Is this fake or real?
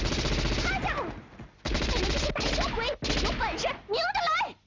real